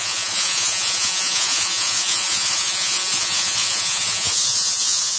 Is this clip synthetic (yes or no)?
yes